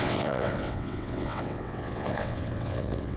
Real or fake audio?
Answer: fake